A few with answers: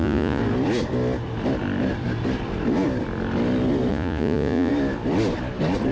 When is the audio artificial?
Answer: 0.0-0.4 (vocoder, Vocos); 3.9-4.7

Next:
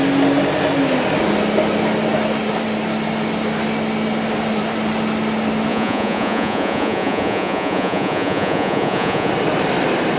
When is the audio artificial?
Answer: 5.7-9.3 (vocoder, Vocos)

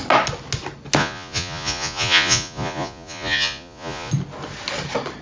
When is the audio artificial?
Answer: 1.0-4.1 (vocoder, Vocos)

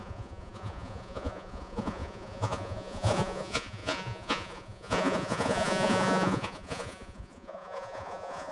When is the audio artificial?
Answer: 0.0-8.5 (vocoder, Vocos)

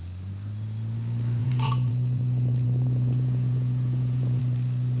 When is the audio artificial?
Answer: 1.4-4.4 (vocoder, Vocos)